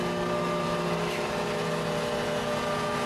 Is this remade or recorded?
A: recorded